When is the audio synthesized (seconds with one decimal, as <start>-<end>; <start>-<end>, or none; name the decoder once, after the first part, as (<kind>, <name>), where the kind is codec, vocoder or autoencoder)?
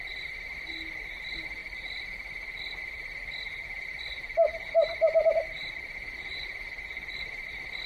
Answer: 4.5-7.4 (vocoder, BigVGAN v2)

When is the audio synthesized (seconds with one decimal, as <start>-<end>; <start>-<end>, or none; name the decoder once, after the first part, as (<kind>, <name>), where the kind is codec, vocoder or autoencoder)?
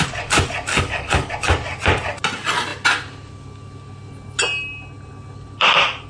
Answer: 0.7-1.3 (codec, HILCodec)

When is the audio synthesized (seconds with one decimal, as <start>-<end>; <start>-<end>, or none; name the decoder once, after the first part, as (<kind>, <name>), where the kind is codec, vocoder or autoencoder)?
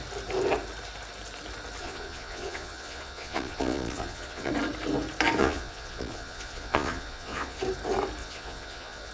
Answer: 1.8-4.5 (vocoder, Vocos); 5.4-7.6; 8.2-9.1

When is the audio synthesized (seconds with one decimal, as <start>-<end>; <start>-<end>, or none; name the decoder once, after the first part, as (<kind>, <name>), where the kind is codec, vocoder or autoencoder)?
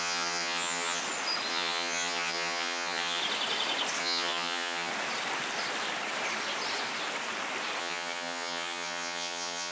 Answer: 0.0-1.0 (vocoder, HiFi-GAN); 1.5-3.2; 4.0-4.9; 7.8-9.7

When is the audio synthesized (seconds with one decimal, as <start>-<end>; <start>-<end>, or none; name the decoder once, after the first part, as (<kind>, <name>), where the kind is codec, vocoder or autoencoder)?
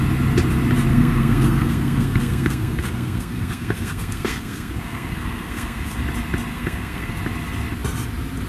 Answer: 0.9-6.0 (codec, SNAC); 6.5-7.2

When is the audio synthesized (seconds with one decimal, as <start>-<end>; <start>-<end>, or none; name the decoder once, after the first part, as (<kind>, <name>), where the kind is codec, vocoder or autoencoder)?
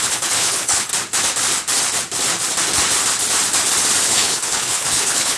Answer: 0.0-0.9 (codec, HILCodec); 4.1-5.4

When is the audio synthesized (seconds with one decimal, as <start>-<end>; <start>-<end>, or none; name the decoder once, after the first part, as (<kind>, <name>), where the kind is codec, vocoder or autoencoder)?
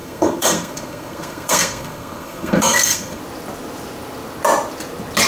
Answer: 0.0-3.2 (codec, SNAC)